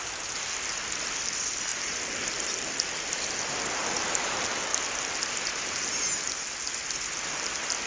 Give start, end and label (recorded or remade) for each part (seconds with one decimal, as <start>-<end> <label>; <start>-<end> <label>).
0.0-7.9 recorded